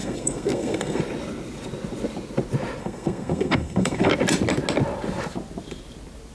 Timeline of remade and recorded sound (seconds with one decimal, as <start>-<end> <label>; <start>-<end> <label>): 0.0-1.0 remade; 1.0-2.8 recorded; 2.8-4.1 remade; 4.1-6.3 recorded